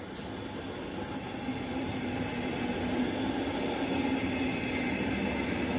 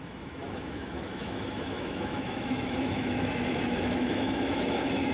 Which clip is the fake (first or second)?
second